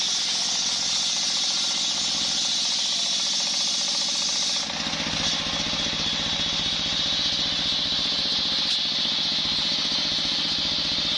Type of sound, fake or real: real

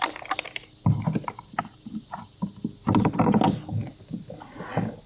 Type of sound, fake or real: real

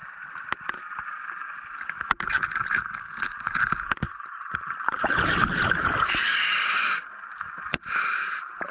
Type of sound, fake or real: real